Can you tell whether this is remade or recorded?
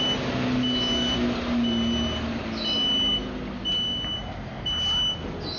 recorded